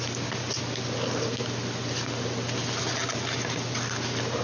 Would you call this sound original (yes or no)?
yes